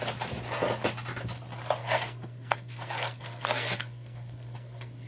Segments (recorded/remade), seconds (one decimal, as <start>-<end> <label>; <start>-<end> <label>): 0.0-1.8 recorded; 1.8-5.1 remade